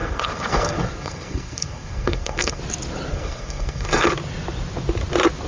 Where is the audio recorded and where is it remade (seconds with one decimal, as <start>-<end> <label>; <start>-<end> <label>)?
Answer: 0.0-2.6 remade; 2.6-3.1 recorded; 3.1-4.1 remade; 4.1-5.5 recorded